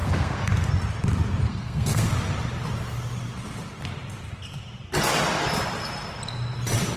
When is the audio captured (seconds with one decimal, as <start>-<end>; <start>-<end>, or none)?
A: 0.7-1.5; 2.1-7.0